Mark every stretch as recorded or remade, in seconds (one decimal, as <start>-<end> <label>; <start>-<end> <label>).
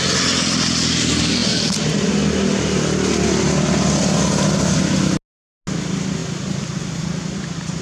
0.0-1.4 recorded; 1.4-2.1 remade; 2.1-7.8 recorded